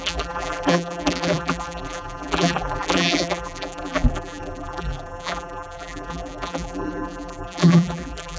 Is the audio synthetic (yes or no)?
yes